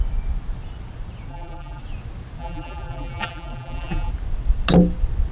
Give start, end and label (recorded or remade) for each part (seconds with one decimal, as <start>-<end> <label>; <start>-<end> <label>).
0.0-1.3 recorded; 1.3-1.8 remade; 1.8-2.4 recorded; 2.4-4.1 remade; 4.1-5.3 recorded